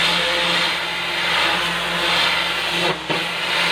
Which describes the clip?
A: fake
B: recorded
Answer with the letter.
B